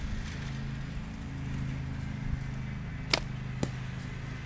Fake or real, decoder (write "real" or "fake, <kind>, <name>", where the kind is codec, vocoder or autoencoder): real